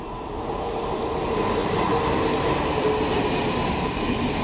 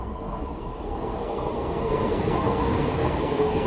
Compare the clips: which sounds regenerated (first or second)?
second